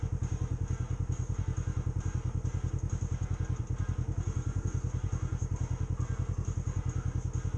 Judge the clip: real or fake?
real